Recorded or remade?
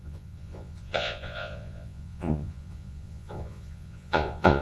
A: remade